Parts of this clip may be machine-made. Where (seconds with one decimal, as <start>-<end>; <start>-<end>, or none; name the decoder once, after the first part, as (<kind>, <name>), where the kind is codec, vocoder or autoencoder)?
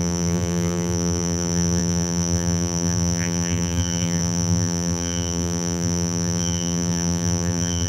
0.0-7.9 (vocoder, BigVGAN v2)